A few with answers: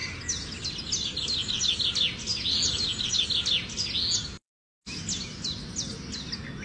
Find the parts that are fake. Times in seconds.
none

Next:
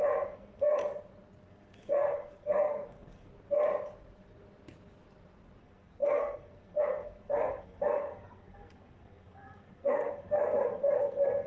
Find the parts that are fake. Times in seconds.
0.0-0.8 (codec, SNAC); 1.5-3.3; 5.6-11.5

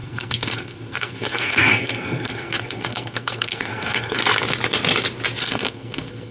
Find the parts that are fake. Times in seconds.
0.0-4.2 (codec, SNAC); 5.4-6.3

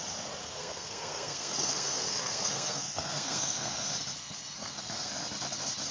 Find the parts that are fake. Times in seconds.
0.4-3.9 (codec, SNAC); 4.6-5.1

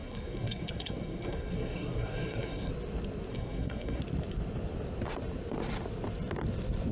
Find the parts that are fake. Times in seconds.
0.0-2.7 (codec, SNAC); 3.3-4.0